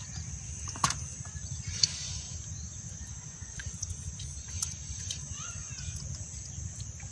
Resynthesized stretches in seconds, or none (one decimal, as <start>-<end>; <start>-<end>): 1.7-6.0